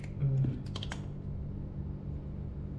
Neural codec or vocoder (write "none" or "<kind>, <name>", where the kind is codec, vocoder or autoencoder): none